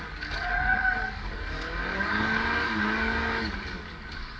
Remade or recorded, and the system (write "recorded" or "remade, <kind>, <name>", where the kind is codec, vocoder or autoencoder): remade, codec, DAC